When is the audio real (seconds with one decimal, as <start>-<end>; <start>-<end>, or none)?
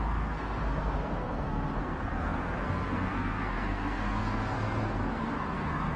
none